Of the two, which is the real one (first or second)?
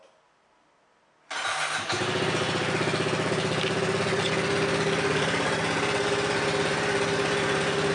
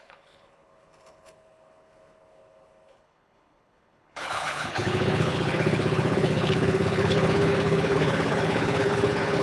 first